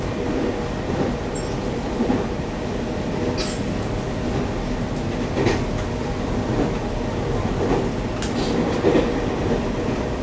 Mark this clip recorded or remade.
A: recorded